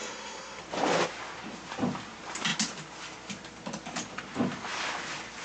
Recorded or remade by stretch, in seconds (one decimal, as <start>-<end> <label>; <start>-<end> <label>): 0.0-0.6 remade; 0.6-5.4 recorded